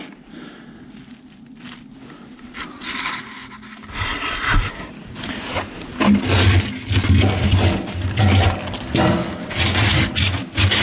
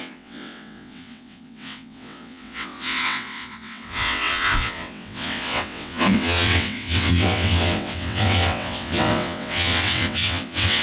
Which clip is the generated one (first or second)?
second